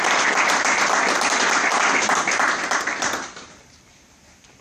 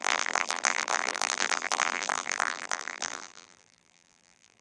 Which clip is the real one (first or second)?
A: first